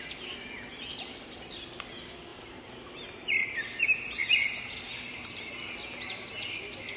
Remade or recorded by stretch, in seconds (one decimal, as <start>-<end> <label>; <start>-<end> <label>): 0.0-2.3 recorded; 2.3-3.0 remade; 3.0-7.0 recorded